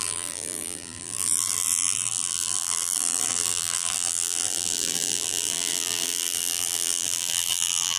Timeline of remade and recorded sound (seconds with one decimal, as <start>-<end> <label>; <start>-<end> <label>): 0.0-8.0 remade